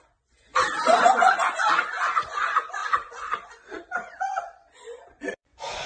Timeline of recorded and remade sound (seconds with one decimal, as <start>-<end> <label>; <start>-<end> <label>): 0.0-5.9 remade